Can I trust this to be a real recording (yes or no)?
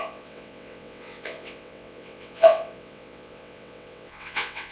no